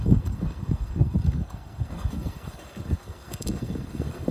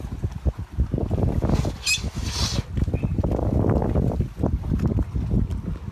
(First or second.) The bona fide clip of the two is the second